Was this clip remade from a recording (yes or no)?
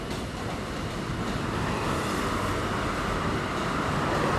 no